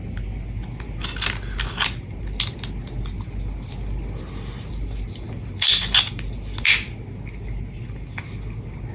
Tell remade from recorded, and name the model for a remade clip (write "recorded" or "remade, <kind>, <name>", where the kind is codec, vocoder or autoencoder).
recorded